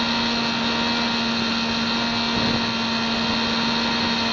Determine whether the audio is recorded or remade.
recorded